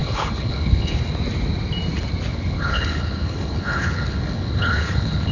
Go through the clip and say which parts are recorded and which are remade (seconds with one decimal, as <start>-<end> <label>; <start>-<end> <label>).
0.0-1.0 remade; 1.0-2.3 recorded; 2.3-5.3 remade